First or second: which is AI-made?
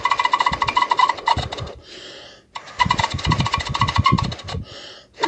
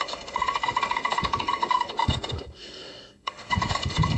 second